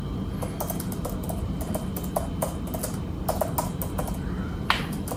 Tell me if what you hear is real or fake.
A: real